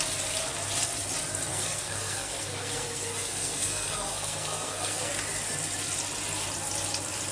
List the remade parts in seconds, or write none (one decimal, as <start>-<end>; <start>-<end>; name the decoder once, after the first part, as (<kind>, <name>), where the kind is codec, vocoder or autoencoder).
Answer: 1.5-5.1 (codec, SNAC)